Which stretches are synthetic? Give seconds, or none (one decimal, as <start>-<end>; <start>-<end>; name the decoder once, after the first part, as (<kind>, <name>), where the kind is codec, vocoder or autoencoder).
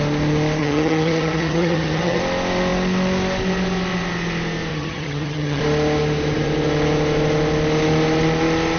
0.6-2.2 (vocoder, HiFi-GAN); 4.7-5.6